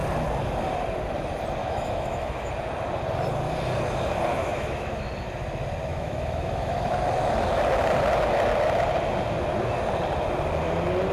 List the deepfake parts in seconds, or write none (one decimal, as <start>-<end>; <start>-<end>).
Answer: 1.6-2.5; 4.3-5.1; 5.9-6.9